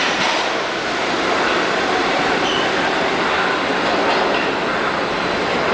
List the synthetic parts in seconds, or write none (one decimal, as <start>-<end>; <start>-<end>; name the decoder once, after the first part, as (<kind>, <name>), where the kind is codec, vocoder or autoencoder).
0.0-0.8 (vocoder, BigVGAN v2); 2.0-2.5